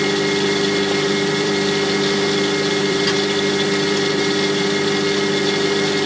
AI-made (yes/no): yes